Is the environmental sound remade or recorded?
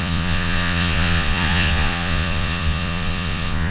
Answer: remade